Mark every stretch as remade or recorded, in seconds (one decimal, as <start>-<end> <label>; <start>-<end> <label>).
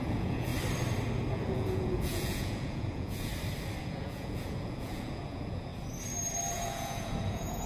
0.0-0.5 remade; 0.5-1.3 recorded; 1.3-3.3 remade; 3.3-3.8 recorded; 3.8-5.7 remade; 5.7-6.5 recorded; 6.5-7.7 remade